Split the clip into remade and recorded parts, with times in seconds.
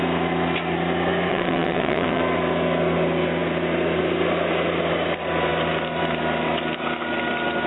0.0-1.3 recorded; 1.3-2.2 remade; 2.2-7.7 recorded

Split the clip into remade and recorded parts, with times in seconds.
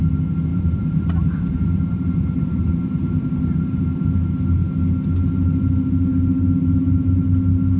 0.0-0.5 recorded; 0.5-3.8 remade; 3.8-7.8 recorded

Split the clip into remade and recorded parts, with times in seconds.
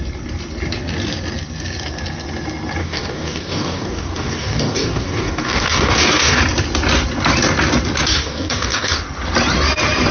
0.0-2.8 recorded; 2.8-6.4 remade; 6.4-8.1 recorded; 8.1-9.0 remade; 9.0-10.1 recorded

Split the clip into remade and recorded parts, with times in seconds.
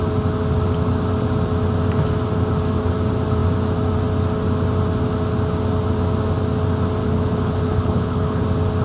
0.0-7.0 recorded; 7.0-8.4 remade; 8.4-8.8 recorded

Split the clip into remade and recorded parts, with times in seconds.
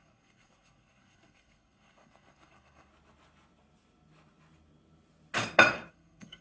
0.0-2.9 remade; 2.9-5.9 recorded; 5.9-6.4 remade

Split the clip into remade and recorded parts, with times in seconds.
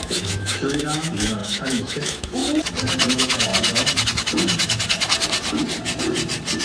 0.0-2.4 remade; 2.4-3.1 recorded; 3.1-3.5 remade; 3.5-6.6 recorded